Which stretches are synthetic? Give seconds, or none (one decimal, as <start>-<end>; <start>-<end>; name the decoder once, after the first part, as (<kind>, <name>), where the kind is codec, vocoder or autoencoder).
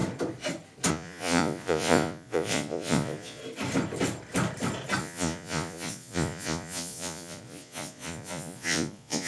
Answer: 0.9-3.4 (vocoder, Vocos); 5.0-9.3